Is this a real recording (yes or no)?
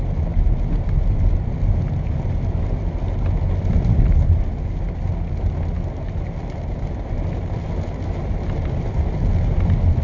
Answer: yes